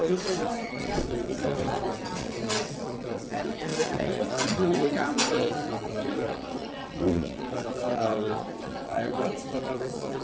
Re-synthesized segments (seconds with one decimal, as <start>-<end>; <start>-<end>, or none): 0.0-10.2